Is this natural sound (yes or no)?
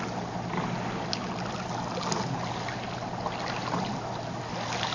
yes